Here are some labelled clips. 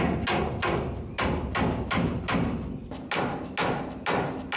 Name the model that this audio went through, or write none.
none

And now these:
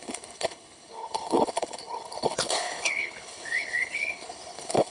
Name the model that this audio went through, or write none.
codec, HILCodec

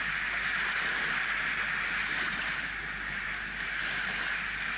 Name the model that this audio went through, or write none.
none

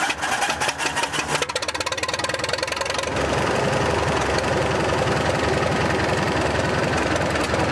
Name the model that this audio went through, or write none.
none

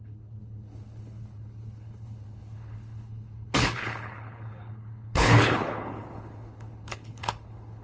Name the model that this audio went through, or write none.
codec, HILCodec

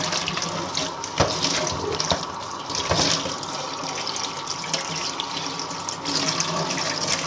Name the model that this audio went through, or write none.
none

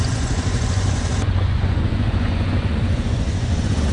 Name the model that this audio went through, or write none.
vocoder, Vocos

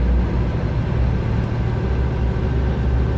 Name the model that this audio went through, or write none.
none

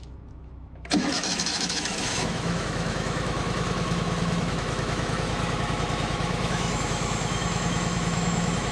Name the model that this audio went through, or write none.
autoencoder, DAC-VAE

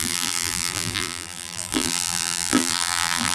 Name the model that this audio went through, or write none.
vocoder, BigVGAN v2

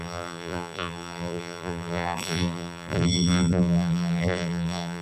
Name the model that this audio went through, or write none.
vocoder, BigVGAN v2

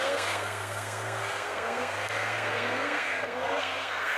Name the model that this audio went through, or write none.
codec, SNAC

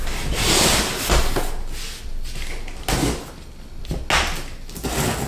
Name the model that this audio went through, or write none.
none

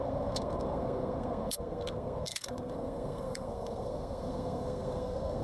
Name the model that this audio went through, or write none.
codec, SNAC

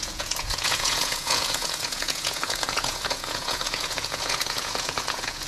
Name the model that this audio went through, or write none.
vocoder, Vocos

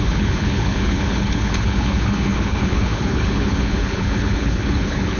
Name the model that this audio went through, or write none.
codec, HILCodec